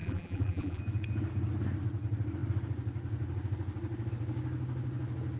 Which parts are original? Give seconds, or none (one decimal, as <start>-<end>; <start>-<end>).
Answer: 0.8-5.4